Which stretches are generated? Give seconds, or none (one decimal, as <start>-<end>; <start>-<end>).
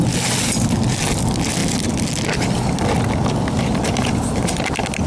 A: none